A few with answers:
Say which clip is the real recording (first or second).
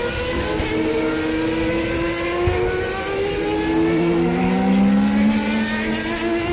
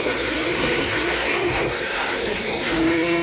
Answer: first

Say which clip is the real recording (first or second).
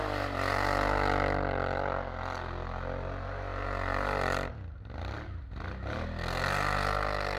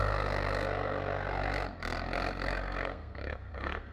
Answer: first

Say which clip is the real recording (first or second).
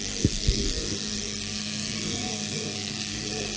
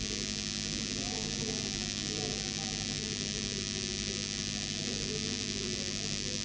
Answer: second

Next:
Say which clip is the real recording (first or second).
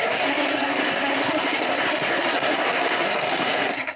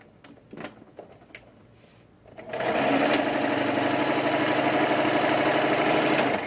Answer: second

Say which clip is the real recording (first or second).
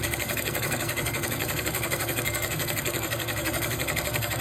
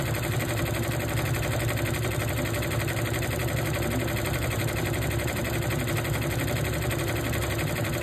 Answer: second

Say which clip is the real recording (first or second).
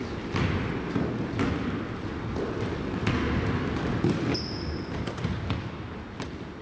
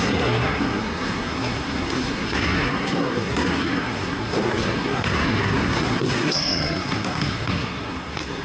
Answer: first